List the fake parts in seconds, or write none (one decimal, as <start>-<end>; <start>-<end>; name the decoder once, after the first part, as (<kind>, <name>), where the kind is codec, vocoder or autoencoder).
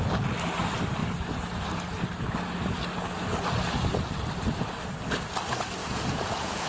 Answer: 5.8-6.7 (vocoder, Vocos)